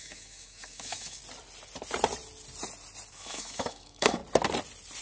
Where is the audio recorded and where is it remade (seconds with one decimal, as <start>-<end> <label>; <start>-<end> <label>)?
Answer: 0.0-1.2 remade; 1.2-3.1 recorded; 3.1-4.2 remade; 4.2-5.0 recorded